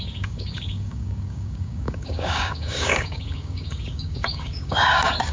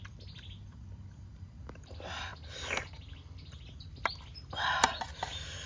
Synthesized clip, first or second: first